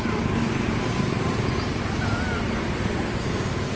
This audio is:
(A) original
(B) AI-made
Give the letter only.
A